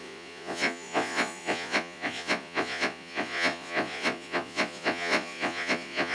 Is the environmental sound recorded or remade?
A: remade